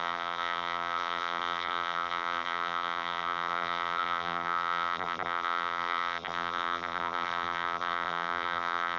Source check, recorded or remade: remade